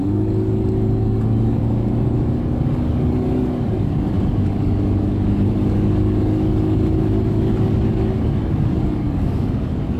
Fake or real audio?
fake